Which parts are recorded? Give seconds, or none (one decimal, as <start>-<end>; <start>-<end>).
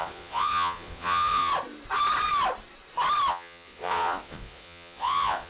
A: 1.5-3.3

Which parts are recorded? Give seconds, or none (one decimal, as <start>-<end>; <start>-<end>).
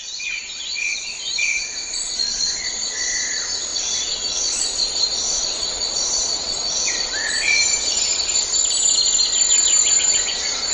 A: 8.5-9.5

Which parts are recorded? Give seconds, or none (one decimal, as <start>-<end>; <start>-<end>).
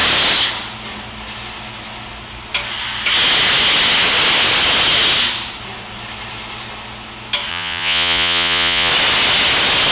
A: 0.0-7.5; 8.9-9.9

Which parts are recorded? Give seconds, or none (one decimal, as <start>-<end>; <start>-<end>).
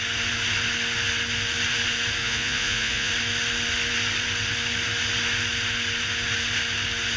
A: 0.0-2.2; 3.1-7.2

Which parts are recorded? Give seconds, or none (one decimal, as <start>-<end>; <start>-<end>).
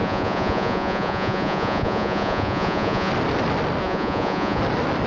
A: 3.1-3.8; 4.6-5.1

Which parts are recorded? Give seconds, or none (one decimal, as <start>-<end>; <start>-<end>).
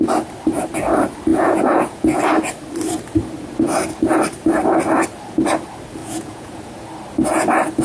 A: 0.0-1.3; 2.2-6.0; 6.6-7.8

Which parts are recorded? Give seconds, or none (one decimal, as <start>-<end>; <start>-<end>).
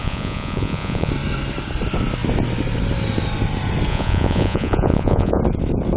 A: 1.1-3.9; 5.4-6.0